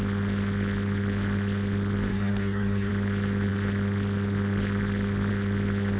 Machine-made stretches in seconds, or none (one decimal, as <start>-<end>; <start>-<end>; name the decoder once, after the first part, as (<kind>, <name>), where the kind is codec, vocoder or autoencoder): 2.1-2.9 (codec, SNAC)